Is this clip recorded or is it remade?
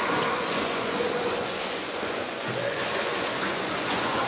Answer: remade